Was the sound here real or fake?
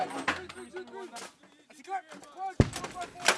real